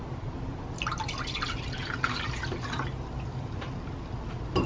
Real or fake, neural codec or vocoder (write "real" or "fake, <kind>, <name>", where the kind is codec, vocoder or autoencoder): real